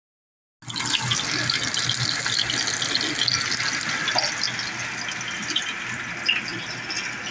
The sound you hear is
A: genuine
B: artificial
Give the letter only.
A